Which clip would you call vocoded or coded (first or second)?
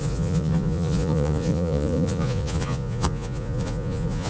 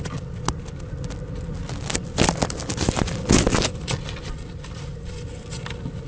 first